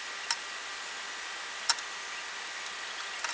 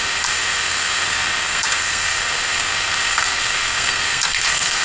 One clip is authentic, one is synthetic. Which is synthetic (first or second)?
second